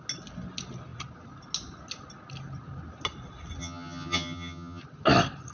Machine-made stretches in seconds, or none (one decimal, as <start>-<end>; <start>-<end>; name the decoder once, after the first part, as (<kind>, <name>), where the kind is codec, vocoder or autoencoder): 3.6-4.8 (vocoder, HiFi-GAN)